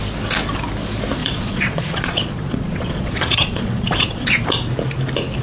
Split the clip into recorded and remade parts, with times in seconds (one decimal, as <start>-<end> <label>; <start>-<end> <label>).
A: 0.0-1.2 recorded; 1.2-4.4 remade; 4.4-5.4 recorded